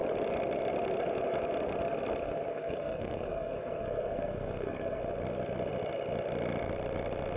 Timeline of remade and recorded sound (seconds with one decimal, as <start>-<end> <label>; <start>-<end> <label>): 0.0-2.5 recorded; 2.5-5.0 remade; 5.0-7.4 recorded